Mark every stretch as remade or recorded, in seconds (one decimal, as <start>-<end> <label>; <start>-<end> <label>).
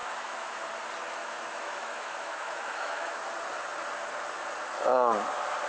0.0-0.7 remade; 0.7-1.2 recorded; 1.2-3.2 remade; 3.2-5.7 recorded